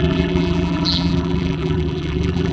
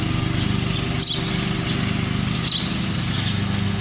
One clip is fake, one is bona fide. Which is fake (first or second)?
first